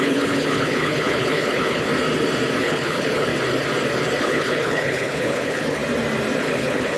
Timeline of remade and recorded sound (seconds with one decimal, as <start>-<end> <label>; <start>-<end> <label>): 0.0-1.9 remade; 1.9-2.6 recorded; 2.6-3.3 remade; 3.3-4.2 recorded; 4.2-5.8 remade; 5.8-6.4 recorded; 6.4-7.0 remade